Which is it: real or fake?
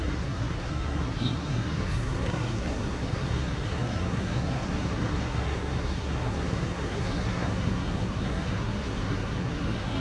fake